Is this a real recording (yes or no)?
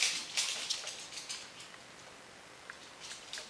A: yes